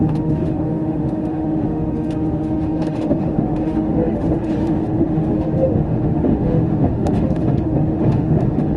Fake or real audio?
fake